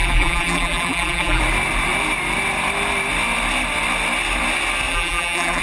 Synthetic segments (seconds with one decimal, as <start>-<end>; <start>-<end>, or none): 0.0-1.4; 4.9-5.6